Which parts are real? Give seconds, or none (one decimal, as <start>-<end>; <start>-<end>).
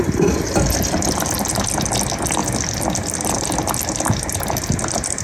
0.0-5.2